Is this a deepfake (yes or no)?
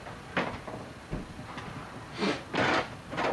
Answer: no